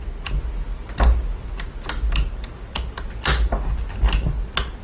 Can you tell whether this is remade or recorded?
recorded